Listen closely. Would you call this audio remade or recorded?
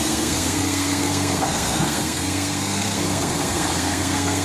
remade